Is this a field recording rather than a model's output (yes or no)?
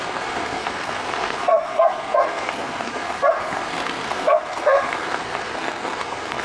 no